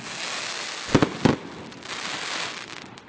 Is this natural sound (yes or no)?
yes